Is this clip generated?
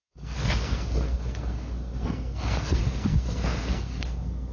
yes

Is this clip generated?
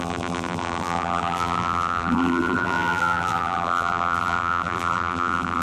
yes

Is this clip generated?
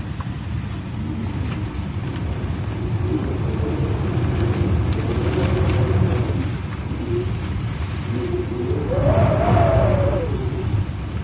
no